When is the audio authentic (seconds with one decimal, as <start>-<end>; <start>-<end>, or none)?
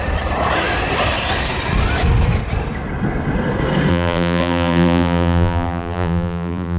0.0-3.9